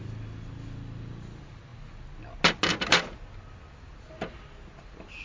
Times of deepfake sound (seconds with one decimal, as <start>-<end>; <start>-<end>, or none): none